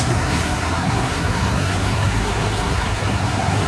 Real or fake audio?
fake